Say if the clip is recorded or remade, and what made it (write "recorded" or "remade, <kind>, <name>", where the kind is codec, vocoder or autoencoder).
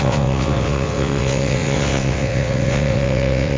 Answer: remade, vocoder, WaveNeXt